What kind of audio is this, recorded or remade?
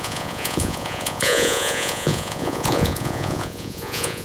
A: remade